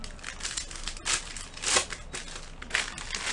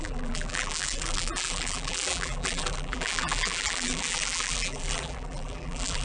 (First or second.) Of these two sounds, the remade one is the second